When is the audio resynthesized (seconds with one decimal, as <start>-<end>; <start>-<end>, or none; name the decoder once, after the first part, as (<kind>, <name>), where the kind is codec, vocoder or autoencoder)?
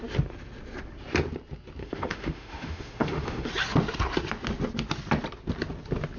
1.8-3.5 (autoencoder, DAC-VAE)